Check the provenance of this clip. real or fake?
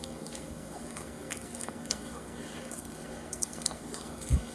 fake